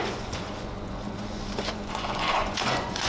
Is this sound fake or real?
fake